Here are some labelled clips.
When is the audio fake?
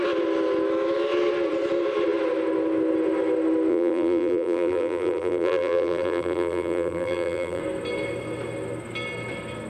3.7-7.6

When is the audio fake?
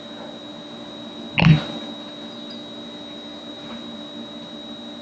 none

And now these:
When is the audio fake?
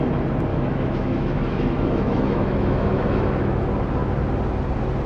0.5-3.6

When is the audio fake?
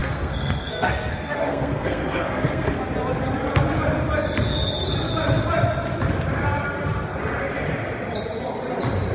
0.0-2.8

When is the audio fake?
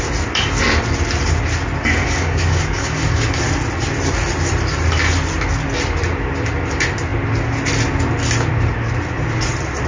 2.0-3.4